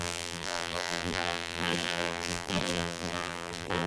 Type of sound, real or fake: fake